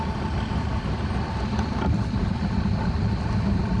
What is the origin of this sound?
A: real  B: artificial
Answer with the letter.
A